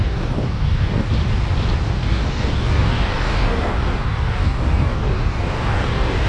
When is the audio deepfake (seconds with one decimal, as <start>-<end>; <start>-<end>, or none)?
0.0-1.1; 1.9-6.3